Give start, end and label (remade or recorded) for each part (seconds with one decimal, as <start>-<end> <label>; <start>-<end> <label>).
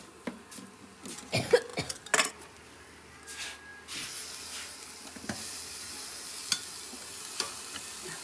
0.0-8.2 recorded